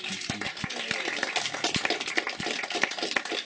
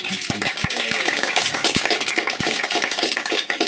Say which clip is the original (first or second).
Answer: first